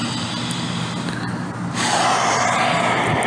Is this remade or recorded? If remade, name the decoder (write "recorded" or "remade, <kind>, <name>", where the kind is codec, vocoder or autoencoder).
recorded